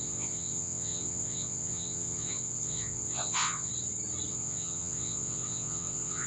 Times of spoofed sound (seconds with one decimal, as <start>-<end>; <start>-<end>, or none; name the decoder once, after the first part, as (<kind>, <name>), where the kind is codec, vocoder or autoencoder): 0.0-3.7 (vocoder, WaveNeXt); 4.3-6.3